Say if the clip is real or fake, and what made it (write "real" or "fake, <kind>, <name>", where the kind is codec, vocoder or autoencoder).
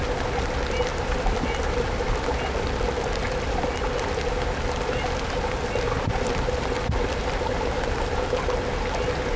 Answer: real